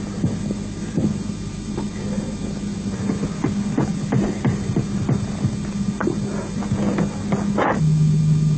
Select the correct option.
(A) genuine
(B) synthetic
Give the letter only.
A